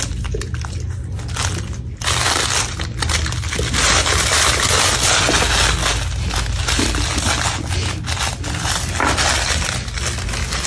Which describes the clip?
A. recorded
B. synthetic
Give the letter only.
A